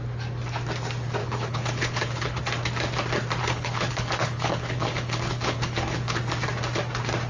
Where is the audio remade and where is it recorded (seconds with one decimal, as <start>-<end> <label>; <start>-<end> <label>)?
0.0-1.2 recorded; 1.2-2.4 remade; 2.4-3.4 recorded; 3.4-6.2 remade; 6.2-7.3 recorded